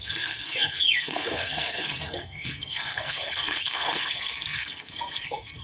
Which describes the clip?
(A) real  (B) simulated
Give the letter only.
B